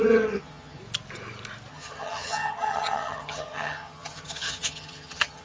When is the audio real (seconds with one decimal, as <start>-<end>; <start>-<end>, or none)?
0.8-1.7